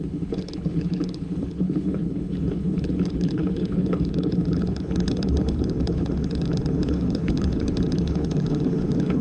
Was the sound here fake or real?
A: fake